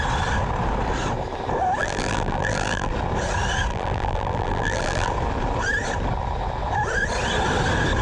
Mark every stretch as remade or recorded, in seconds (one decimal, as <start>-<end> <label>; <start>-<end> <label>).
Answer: 0.0-1.8 recorded; 1.8-2.9 remade; 2.9-3.7 recorded; 3.7-5.1 remade; 5.1-8.0 recorded